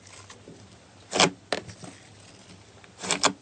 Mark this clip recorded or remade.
recorded